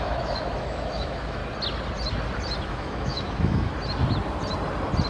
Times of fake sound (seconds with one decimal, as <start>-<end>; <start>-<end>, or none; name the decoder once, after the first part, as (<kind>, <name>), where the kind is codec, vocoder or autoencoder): 0.0-1.4 (autoencoder, DAC-VAE); 2.6-3.7

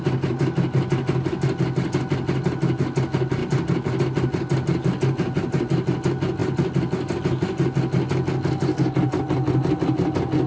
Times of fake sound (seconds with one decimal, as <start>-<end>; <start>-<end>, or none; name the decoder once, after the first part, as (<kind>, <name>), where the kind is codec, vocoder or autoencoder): none

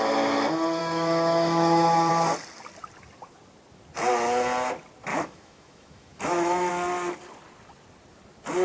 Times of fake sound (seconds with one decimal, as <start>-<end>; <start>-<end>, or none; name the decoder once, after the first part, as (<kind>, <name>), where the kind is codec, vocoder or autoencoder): 0.8-2.1 (autoencoder, DAC-VAE); 5.1-6.7

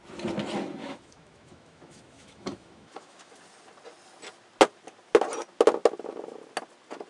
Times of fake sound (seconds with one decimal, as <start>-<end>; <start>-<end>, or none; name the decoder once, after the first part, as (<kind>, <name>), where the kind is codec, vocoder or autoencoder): 0.8-3.3 (autoencoder, DAC-VAE)

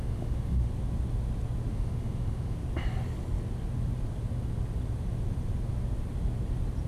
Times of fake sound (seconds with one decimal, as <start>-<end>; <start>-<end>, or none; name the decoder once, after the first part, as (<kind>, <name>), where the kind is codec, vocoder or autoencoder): 0.0-0.7 (autoencoder, DAC-VAE); 1.7-2.6

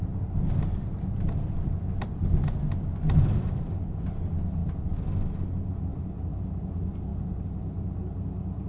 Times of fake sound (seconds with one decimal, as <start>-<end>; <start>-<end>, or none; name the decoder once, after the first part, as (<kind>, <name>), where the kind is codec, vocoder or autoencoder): none

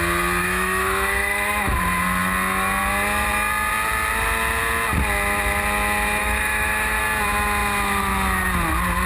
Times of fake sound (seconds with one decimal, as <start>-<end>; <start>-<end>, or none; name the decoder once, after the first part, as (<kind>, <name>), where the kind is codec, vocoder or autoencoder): 0.4-1.8 (autoencoder, DAC-VAE); 6.2-7.0